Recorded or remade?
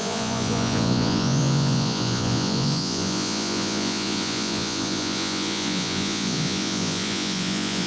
remade